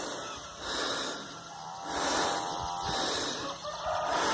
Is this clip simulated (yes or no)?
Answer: no